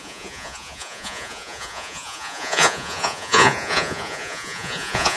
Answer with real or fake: fake